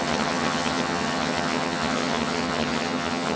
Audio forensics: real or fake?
fake